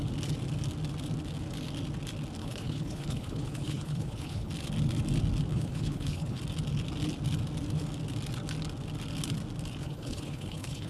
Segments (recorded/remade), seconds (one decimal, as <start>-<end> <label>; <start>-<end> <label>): 0.0-2.4 recorded; 2.4-4.5 remade; 4.5-5.5 recorded; 5.5-6.4 remade; 6.4-9.8 recorded; 9.8-10.9 remade